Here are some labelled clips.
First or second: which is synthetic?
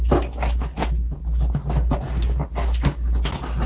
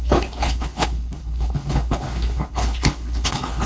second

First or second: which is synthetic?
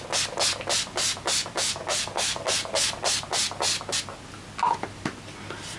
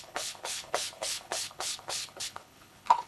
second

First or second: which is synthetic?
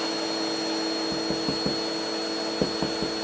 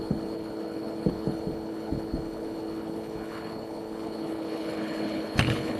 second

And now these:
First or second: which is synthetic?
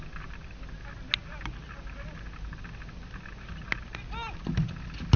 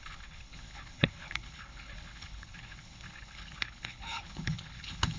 second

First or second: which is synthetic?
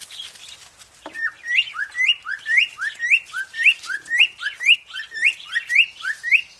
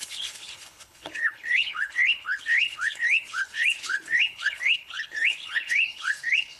second